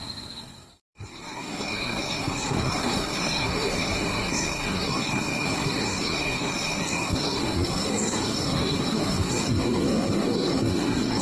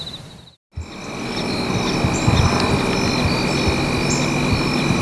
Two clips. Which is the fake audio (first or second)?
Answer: first